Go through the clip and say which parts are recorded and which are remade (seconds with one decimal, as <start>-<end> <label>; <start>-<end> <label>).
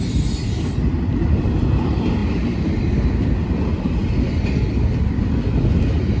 0.0-2.2 recorded; 2.2-2.8 remade; 2.8-6.2 recorded